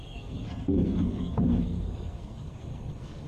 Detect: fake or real fake